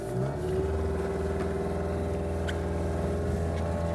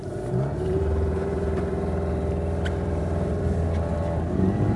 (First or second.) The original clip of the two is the first